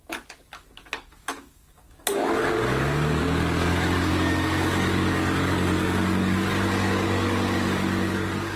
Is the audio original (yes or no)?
no